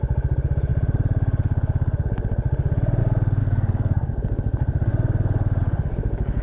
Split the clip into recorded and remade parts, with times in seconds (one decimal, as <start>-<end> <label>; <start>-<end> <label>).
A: 0.0-3.4 recorded; 3.4-4.1 remade; 4.1-6.4 recorded

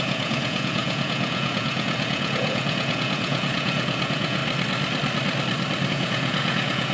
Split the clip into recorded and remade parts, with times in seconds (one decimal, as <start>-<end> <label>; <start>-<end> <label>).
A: 0.0-4.4 remade; 4.4-5.9 recorded; 5.9-6.9 remade

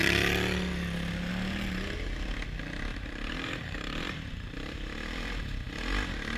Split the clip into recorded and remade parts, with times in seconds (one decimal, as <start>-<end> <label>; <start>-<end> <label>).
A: 0.0-2.9 recorded; 2.9-5.4 remade; 5.4-6.4 recorded

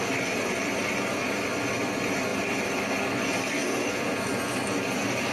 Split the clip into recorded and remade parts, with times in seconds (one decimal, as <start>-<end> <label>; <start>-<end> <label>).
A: 0.0-5.3 recorded

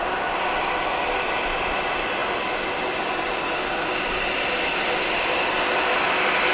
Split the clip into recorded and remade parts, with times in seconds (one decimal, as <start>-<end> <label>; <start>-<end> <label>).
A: 0.0-6.5 recorded

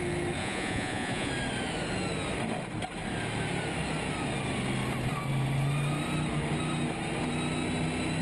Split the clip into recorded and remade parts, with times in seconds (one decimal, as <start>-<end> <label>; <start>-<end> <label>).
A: 0.0-0.4 recorded; 0.4-1.3 remade; 1.3-8.2 recorded